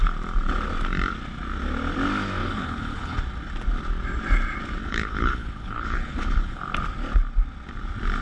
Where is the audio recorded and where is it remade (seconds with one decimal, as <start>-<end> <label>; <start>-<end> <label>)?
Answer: 0.0-2.4 recorded; 2.4-3.2 remade; 3.2-4.8 recorded; 4.8-6.6 remade; 6.6-8.2 recorded